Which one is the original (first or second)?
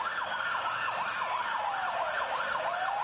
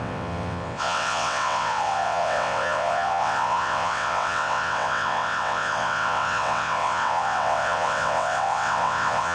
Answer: first